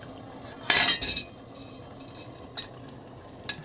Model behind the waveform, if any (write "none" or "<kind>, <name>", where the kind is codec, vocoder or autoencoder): none